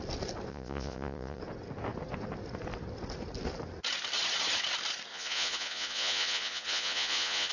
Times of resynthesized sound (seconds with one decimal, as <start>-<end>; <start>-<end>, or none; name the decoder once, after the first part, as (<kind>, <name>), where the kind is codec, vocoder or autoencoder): 0.5-1.4 (vocoder, Vocos); 5.1-7.5